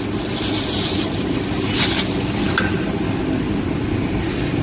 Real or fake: real